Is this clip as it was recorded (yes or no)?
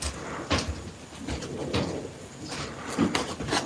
yes